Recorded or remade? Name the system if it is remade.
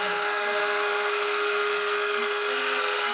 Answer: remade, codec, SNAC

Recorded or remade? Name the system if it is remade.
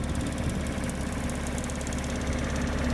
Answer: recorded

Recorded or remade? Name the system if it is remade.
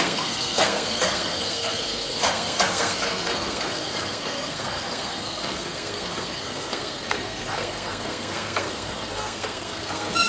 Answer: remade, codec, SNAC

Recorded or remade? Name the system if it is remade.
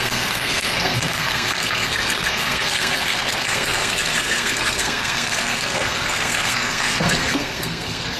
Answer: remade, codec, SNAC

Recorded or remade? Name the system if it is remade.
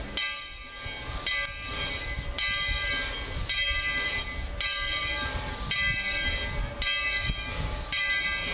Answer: recorded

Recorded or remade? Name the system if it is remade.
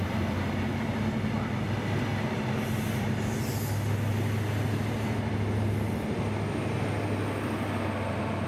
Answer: recorded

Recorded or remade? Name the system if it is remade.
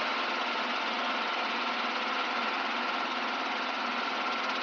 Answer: recorded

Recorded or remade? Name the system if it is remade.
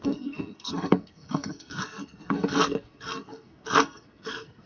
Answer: remade, codec, SNAC